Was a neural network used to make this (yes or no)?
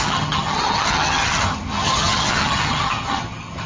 yes